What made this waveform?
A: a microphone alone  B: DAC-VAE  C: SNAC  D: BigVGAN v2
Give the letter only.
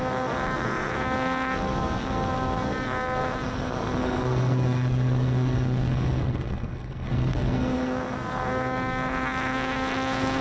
C